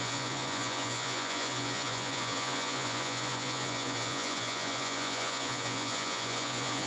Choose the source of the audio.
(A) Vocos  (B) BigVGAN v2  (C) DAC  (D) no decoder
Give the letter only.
A